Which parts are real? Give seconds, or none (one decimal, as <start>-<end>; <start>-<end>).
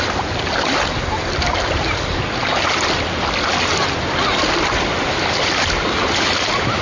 0.0-6.8